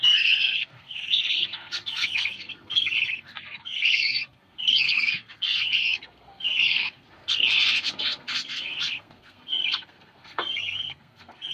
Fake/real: fake